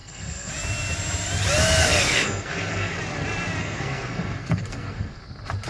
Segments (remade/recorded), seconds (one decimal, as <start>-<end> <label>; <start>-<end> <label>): 0.0-0.5 remade; 0.5-1.8 recorded; 1.8-3.0 remade; 3.0-3.6 recorded; 3.6-5.2 remade; 5.2-5.7 recorded